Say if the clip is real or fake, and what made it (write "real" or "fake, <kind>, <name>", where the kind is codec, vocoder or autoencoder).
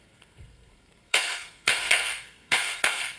fake, codec, SNAC